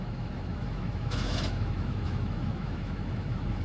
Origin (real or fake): fake